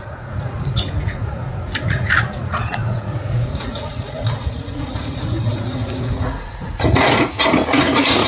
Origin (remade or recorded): remade